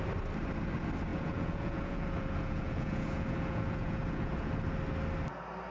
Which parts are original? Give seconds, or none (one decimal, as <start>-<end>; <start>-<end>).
0.0-1.1; 4.5-5.7